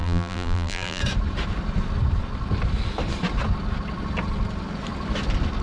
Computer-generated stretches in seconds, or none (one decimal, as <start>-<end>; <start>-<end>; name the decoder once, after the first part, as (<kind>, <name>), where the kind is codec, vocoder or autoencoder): 0.0-1.0 (vocoder, BigVGAN v2)

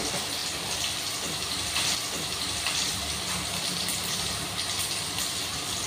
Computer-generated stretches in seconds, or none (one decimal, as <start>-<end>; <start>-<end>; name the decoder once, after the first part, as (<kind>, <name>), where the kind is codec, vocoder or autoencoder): 0.4-3.9 (vocoder, BigVGAN v2)

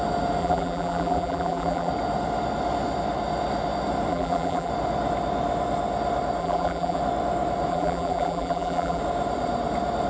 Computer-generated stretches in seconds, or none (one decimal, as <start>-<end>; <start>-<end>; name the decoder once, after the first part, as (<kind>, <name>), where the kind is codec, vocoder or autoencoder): 0.4-1.9 (vocoder, BigVGAN v2); 4.1-4.7; 6.4-7.0; 7.7-9.0

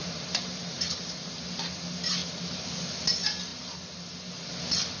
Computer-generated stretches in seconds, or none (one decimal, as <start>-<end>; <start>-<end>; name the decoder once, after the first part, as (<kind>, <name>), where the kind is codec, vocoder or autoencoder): 0.0-1.3 (vocoder, BigVGAN v2)

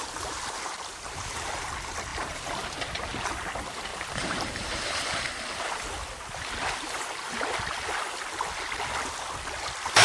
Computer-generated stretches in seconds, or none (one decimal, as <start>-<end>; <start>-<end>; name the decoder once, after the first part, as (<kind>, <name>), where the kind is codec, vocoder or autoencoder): 2.1-2.8 (vocoder, BigVGAN v2); 3.9-5.2

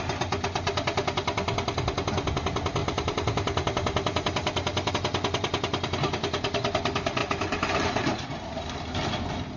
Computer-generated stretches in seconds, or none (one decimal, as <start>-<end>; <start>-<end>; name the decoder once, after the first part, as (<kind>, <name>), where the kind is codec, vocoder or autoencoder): 2.8-4.9 (vocoder, BigVGAN v2); 7.2-8.7